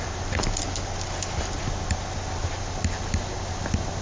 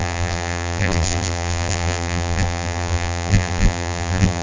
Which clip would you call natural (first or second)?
first